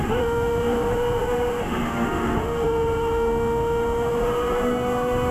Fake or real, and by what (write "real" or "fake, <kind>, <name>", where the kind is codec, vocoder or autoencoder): fake, autoencoder, DAC-VAE